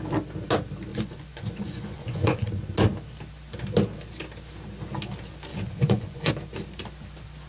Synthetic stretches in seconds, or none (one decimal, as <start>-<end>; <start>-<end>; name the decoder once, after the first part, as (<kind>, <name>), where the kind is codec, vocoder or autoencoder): 0.9-2.5 (vocoder, Vocos); 5.5-6.3